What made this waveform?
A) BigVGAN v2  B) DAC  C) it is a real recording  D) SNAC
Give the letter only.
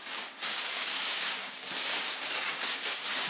B